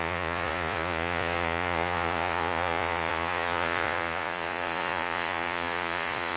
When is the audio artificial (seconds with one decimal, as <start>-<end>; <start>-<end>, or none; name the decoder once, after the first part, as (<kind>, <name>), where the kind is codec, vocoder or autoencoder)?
0.0-6.4 (vocoder, Vocos)